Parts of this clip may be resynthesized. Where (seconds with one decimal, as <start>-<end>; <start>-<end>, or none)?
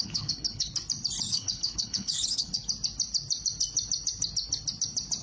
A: 0.0-0.7; 1.3-2.5